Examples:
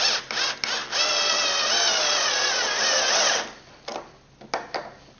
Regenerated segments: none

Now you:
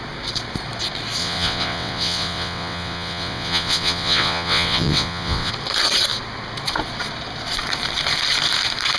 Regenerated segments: 1.2-5.5 (vocoder, WaveNeXt)

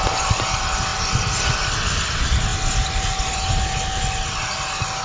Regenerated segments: none

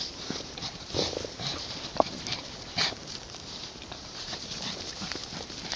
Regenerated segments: 0.0-5.8 (vocoder, BigVGAN v2)